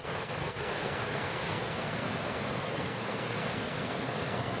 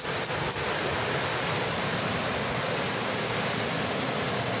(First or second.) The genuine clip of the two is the second